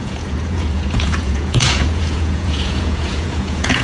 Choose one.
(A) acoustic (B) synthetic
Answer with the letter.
B